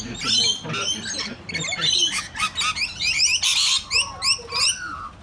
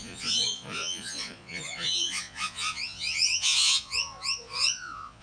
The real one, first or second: first